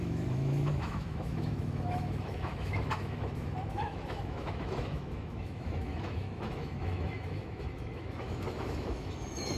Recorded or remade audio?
remade